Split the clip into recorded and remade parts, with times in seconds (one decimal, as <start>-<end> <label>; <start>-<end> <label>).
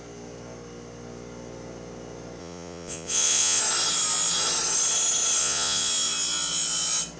0.0-2.4 recorded; 2.4-3.6 remade; 3.6-5.4 recorded; 5.4-5.9 remade; 5.9-7.2 recorded